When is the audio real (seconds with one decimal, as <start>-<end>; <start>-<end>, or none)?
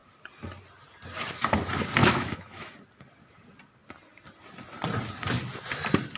0.0-2.0; 2.7-6.2